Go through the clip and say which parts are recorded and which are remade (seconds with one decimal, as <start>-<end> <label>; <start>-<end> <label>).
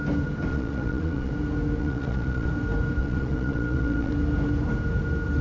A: 0.0-0.5 recorded; 0.5-1.3 remade; 1.3-1.8 recorded; 1.8-2.5 remade; 2.5-3.0 recorded; 3.0-4.1 remade; 4.1-5.4 recorded